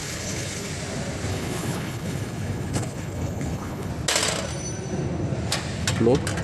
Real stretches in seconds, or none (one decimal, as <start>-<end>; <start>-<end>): 0.7-1.3; 3.9-6.4